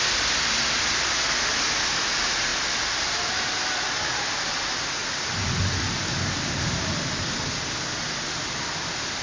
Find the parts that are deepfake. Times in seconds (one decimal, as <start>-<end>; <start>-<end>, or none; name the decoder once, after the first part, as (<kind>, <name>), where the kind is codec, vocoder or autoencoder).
none